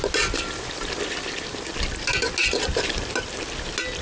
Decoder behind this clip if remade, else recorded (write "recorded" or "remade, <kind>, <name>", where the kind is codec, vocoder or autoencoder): recorded